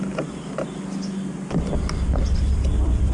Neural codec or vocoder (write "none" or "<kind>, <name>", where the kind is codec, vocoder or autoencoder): none